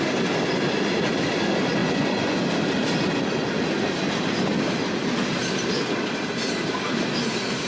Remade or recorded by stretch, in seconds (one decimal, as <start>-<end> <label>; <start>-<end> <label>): 0.0-1.8 recorded; 1.8-2.4 remade; 2.4-7.7 recorded